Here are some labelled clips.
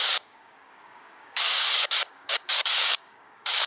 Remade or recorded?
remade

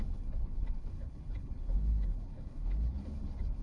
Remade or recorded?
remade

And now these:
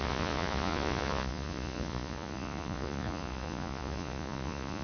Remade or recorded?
remade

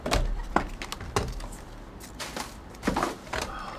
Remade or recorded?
recorded